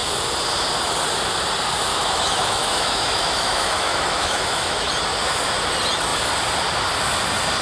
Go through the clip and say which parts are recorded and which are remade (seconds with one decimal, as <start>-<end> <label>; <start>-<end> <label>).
0.0-1.9 recorded; 1.9-4.9 remade; 4.9-7.6 recorded